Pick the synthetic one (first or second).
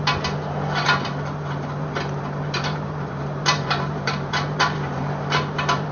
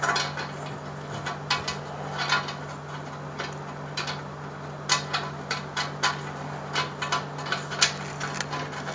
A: first